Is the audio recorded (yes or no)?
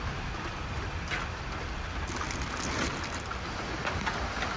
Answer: yes